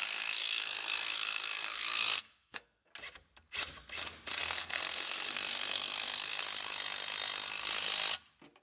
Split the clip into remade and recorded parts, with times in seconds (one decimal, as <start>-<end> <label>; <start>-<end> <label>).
0.0-2.9 remade; 2.9-4.4 recorded; 4.4-6.4 remade; 6.4-8.6 recorded